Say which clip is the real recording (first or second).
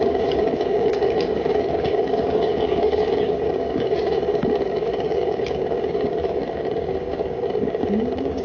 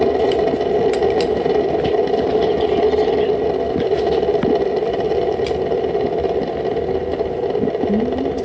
second